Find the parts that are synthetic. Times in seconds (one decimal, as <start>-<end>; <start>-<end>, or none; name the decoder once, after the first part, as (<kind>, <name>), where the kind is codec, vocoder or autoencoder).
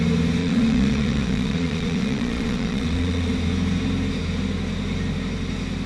0.4-3.3 (vocoder, Vocos)